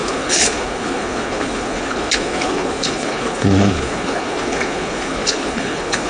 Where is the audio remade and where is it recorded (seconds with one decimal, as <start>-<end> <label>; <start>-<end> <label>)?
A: 0.0-6.1 remade